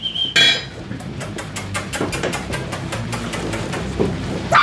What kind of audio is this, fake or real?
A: real